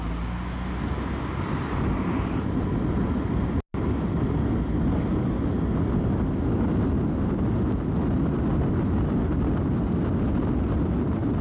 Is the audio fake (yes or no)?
no